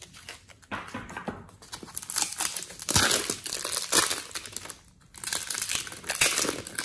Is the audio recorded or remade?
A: recorded